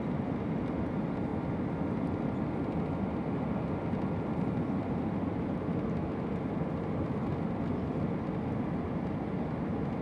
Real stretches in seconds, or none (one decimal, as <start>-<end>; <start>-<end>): 0.0-10.0